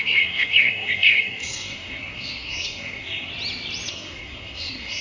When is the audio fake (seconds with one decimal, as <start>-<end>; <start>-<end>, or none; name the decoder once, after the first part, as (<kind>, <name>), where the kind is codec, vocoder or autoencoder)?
0.0-3.3 (codec, SNAC); 3.9-5.0